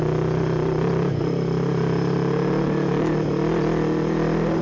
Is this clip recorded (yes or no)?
yes